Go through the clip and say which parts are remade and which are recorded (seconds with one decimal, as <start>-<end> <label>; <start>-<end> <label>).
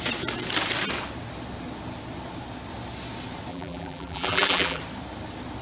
0.0-3.5 recorded; 3.5-4.8 remade; 4.8-5.6 recorded